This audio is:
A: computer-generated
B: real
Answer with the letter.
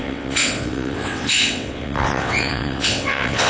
A